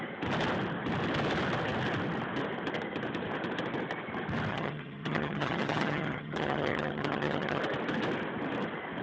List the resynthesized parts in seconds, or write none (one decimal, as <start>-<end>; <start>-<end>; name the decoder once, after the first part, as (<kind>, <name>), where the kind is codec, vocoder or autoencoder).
4.5-7.6 (vocoder, HiFi-GAN)